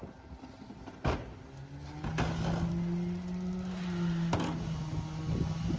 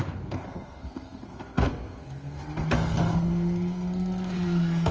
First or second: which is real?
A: first